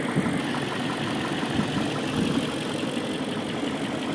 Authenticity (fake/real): real